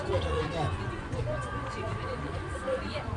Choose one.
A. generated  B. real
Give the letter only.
A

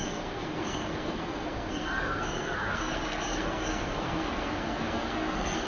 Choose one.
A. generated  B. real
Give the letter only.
A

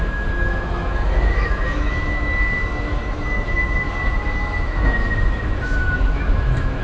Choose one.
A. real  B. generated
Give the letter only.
B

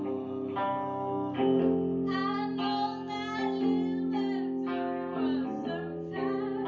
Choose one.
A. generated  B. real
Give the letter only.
B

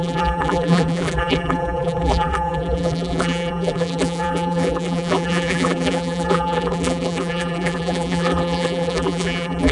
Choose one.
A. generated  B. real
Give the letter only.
A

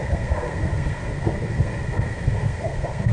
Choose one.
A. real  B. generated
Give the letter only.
B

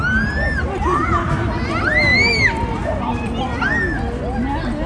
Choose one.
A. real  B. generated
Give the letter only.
A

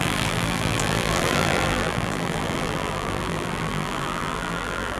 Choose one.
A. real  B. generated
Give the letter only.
B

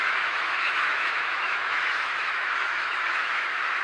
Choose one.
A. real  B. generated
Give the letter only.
B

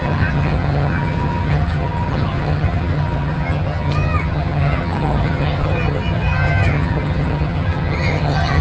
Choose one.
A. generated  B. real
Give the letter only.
A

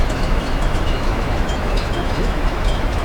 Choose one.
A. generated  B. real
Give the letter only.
A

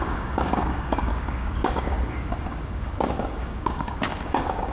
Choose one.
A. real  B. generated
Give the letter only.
B